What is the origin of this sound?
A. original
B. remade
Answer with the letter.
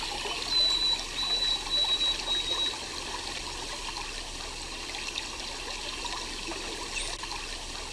A